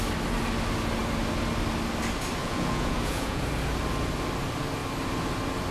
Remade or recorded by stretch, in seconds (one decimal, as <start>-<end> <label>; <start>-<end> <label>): 0.0-2.4 recorded; 2.4-3.4 remade; 3.4-5.7 recorded